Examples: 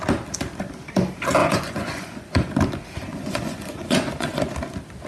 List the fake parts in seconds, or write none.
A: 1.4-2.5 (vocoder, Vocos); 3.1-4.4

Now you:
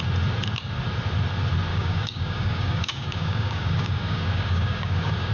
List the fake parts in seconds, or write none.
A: 1.7-5.3 (codec, DAC)

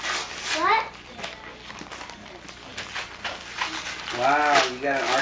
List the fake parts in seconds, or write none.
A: none